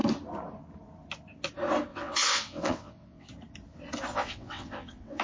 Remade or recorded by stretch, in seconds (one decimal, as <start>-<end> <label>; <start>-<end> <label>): 0.0-1.9 recorded; 1.9-3.3 remade; 3.3-4.1 recorded; 4.1-5.2 remade